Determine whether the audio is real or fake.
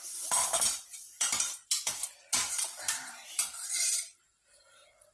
fake